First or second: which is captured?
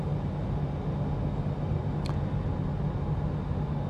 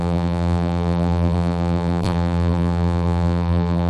first